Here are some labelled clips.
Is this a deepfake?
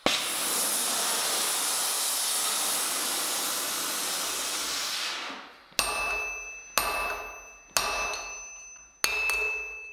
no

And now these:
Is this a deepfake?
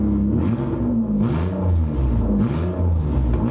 no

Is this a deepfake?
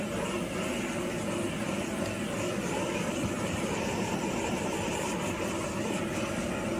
no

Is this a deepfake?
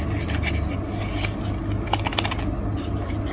no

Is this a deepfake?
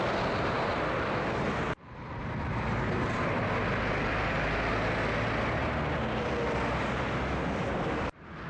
no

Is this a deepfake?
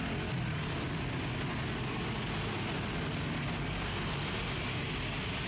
no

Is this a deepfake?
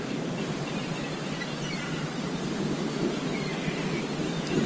no